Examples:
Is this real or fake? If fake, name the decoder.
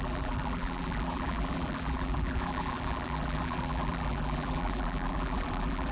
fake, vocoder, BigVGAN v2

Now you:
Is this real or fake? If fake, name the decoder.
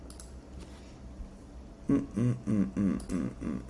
real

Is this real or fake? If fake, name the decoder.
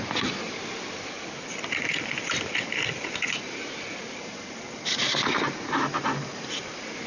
real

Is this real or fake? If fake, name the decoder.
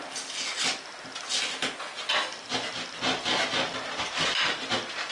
real